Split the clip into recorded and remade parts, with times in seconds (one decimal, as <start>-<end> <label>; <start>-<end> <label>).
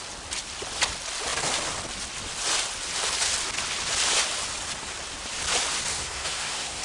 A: 0.0-5.9 recorded; 5.9-6.8 remade